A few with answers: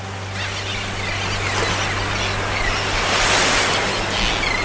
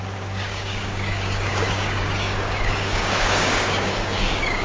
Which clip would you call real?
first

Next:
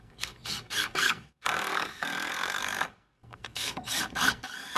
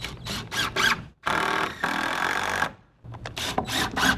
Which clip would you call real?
second